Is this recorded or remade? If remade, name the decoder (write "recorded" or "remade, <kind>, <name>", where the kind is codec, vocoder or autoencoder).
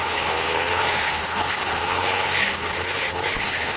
remade, codec, HILCodec